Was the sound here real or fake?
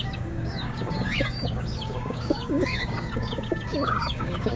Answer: fake